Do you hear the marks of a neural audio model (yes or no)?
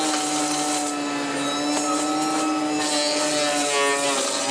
no